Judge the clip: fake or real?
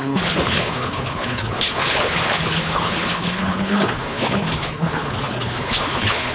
fake